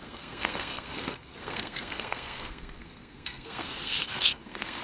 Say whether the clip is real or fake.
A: fake